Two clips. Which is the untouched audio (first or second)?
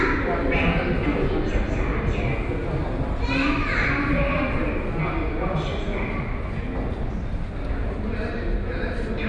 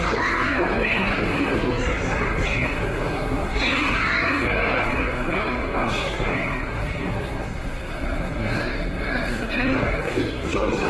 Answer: first